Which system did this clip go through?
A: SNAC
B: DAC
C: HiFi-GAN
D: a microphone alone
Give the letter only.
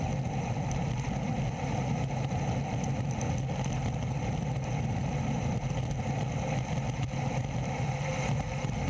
D